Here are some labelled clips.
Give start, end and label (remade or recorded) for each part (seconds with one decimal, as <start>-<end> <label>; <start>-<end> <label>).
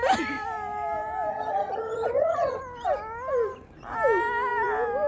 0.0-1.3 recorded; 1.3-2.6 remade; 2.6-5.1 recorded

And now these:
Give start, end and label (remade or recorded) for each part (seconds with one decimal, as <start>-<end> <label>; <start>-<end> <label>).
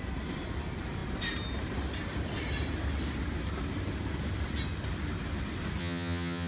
0.0-5.8 recorded; 5.8-6.5 remade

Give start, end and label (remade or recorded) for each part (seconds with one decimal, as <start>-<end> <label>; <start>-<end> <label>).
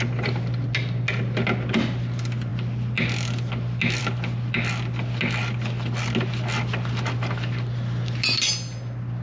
0.0-9.2 recorded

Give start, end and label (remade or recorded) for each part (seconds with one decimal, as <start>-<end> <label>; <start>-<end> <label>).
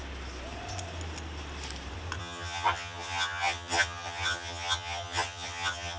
0.0-2.2 recorded; 2.2-6.0 remade